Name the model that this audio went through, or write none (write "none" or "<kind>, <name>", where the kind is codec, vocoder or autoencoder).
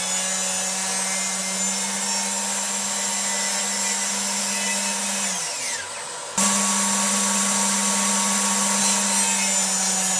none